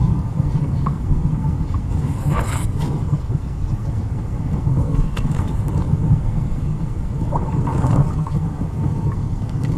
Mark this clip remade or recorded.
remade